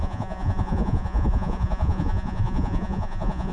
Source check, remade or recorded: remade